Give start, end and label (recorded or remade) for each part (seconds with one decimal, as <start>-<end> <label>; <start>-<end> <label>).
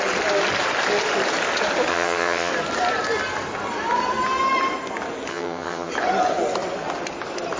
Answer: 0.0-1.9 recorded; 1.9-2.5 remade; 2.5-5.3 recorded; 5.3-5.9 remade; 5.9-7.6 recorded